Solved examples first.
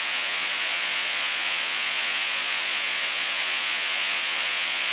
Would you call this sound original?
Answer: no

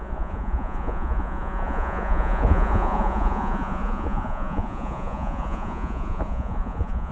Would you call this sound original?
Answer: no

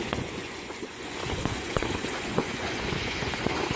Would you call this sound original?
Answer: no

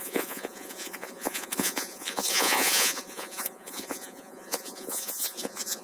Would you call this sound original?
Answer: no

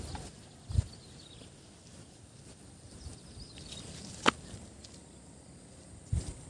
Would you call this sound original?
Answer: yes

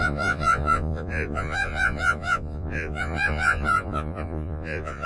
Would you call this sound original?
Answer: no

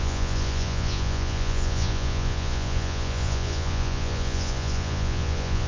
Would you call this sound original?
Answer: no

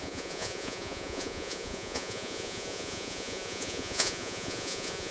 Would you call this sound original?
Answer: no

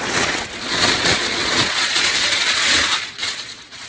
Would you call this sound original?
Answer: no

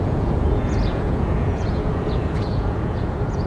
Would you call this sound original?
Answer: no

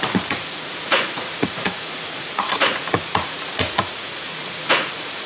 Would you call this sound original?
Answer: no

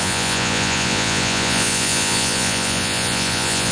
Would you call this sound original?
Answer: no